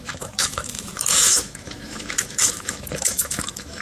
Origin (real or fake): fake